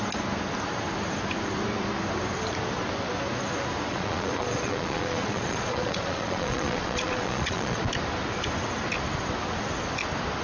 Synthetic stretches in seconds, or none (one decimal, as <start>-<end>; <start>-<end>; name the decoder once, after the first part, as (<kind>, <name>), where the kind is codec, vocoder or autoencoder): 3.9-7.9 (vocoder, Vocos)